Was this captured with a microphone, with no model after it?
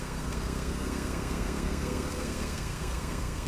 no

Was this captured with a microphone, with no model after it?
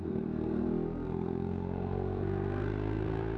no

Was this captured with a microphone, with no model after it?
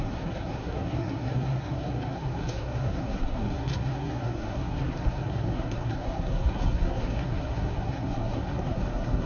no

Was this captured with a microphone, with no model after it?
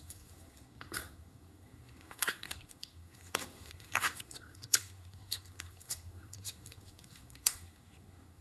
no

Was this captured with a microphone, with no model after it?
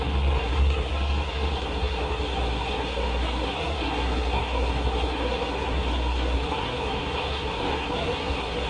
no